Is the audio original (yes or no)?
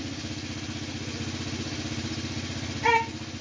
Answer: yes